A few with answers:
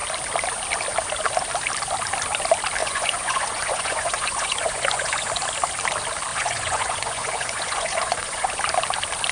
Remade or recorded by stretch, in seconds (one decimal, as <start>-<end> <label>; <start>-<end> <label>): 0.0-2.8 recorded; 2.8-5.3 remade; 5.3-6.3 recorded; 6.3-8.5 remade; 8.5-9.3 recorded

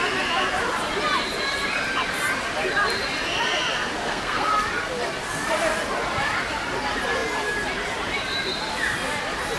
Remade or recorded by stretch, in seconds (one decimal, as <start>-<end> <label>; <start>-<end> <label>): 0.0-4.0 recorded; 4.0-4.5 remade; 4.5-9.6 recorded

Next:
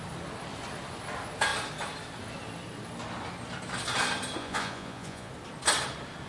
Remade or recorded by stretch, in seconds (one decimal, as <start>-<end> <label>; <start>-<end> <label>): 0.0-4.4 recorded; 4.4-5.3 remade; 5.3-6.3 recorded

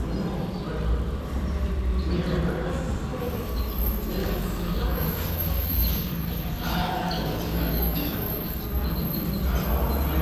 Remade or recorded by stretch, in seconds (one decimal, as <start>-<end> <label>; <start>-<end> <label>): 0.0-3.1 recorded; 3.1-3.6 remade; 3.6-4.2 recorded; 4.2-8.6 remade; 8.6-10.2 recorded